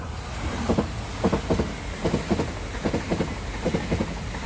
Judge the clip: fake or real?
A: real